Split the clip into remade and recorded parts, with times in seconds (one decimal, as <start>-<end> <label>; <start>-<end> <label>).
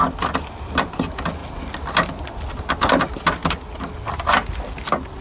0.0-5.2 recorded